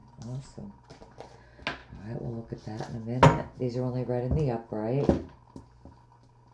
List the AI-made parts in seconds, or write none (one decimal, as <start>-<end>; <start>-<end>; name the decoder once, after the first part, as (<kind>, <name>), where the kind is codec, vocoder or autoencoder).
none